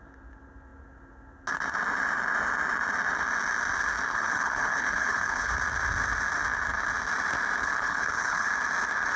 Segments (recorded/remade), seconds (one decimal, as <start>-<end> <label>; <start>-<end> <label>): 0.0-4.1 recorded; 4.1-5.5 remade; 5.5-7.6 recorded; 7.6-8.5 remade; 8.5-9.2 recorded